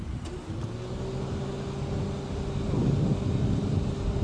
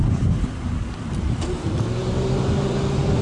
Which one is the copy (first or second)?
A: second